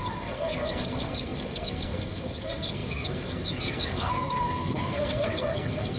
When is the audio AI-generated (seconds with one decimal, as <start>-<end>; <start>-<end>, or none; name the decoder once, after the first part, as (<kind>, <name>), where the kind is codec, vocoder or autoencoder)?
0.0-6.0 (codec, SNAC)